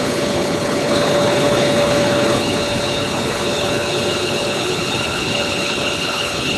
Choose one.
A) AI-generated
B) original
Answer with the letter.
A